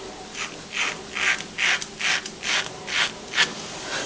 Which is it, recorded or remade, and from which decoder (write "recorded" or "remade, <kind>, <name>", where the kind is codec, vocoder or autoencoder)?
recorded